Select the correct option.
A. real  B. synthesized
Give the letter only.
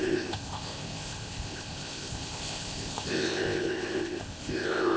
B